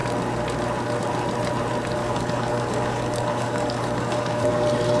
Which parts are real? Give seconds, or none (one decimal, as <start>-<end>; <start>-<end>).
0.0-2.0; 4.5-5.0

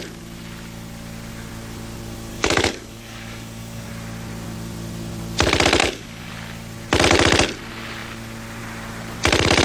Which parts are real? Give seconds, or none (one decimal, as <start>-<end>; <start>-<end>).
0.0-2.3; 3.9-5.8; 6.3-9.6

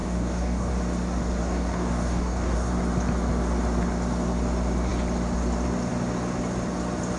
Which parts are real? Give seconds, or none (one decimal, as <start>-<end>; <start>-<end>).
0.7-1.4; 2.7-7.2

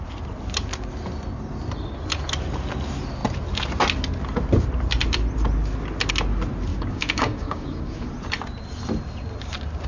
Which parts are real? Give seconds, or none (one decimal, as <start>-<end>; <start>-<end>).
0.0-6.7; 8.1-9.9

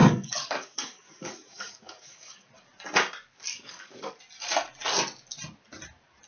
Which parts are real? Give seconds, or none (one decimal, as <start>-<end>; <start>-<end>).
2.5-3.5; 4.1-6.3

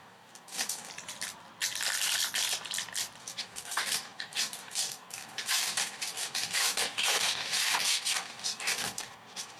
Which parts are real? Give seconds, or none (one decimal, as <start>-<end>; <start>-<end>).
0.9-3.2